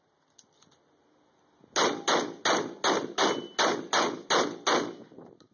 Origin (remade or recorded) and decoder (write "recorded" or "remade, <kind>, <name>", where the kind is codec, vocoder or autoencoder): recorded